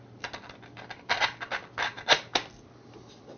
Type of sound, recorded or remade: recorded